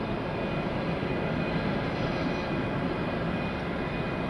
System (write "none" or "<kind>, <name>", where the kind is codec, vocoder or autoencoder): none